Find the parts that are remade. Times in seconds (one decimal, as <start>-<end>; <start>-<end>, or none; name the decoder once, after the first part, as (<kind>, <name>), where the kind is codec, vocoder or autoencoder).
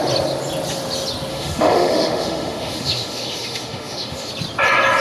1.3-4.3 (autoencoder, DAC-VAE)